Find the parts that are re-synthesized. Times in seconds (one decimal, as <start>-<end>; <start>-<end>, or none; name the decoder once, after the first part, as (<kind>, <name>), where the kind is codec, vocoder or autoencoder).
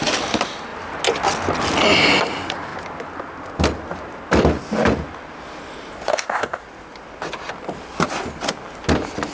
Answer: 6.1-6.6 (codec, ZipCodec)